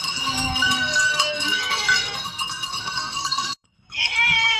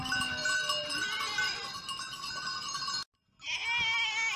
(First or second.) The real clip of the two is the second